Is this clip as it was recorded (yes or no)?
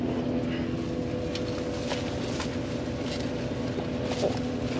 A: yes